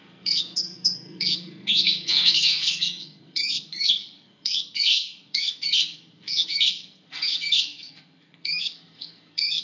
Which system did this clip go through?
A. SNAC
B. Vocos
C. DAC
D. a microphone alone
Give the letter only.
A